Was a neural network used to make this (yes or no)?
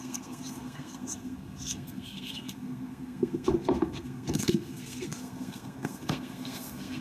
yes